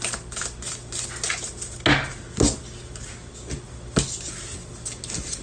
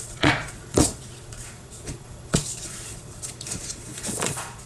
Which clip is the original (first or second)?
first